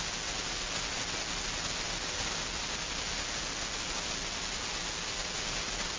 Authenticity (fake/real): real